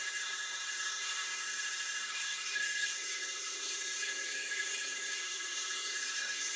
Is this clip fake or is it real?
fake